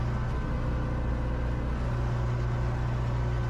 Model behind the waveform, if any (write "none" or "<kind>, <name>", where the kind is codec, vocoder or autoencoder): none